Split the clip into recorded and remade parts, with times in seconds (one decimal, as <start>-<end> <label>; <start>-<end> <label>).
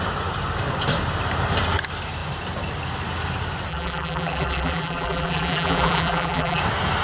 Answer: 0.0-3.7 recorded; 3.7-6.6 remade; 6.6-7.0 recorded